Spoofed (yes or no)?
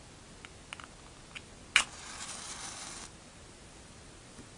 no